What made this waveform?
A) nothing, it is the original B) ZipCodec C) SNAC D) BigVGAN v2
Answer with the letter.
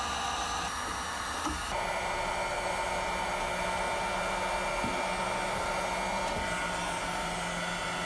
A